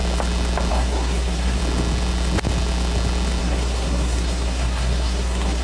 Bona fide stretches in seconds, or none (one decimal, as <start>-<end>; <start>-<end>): 0.0-0.7; 1.6-3.4